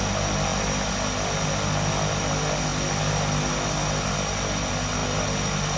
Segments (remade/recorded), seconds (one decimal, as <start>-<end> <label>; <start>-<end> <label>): 0.0-5.8 recorded